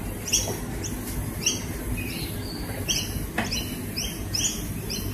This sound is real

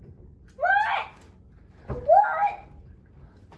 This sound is real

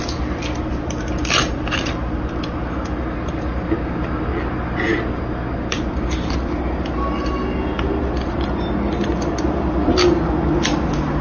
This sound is real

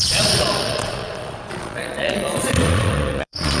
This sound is fake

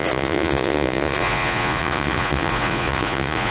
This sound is fake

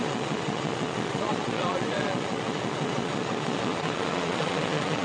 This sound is fake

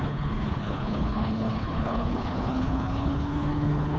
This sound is fake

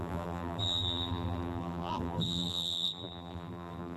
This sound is fake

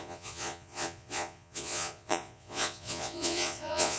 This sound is fake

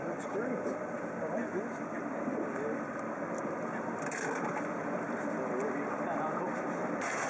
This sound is real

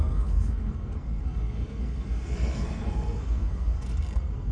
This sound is fake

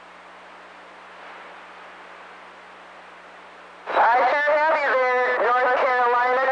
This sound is real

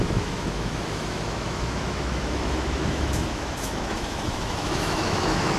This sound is fake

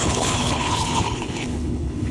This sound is fake